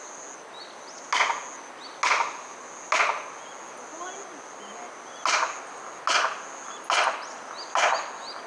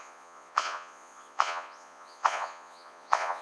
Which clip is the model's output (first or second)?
second